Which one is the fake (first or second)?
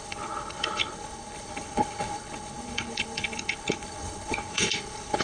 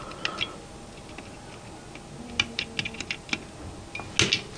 first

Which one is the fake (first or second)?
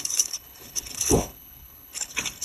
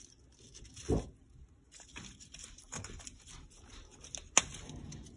first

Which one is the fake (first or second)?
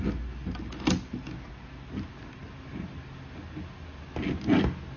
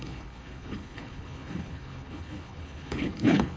second